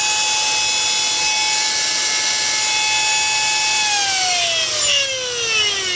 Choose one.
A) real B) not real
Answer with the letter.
A